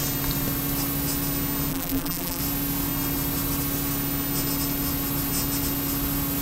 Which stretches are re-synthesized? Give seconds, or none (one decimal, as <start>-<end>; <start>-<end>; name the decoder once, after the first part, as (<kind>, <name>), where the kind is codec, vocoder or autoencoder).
1.7-2.4 (vocoder, BigVGAN v2)